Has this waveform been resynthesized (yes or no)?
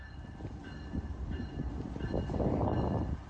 no